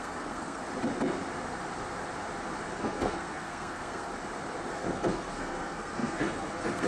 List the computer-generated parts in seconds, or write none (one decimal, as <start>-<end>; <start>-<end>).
0.0-0.6; 2.8-4.1; 4.7-6.9